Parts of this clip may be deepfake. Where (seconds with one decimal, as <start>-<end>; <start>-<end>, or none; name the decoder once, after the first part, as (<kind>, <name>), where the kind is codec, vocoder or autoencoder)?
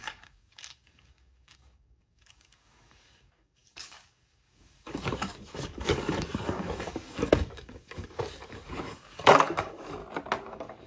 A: 0.0-10.0 (codec, DAC); 10.5-10.9